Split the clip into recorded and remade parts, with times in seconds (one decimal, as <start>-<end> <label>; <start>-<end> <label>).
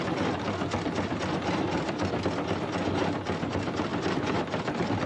0.0-5.1 recorded